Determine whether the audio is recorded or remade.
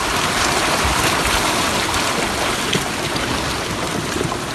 recorded